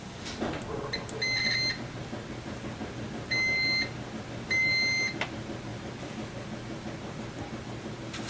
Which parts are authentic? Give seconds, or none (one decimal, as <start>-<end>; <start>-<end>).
0.0-8.3